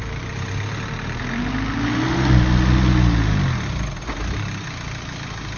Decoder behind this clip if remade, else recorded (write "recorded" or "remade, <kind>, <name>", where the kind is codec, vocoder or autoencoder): recorded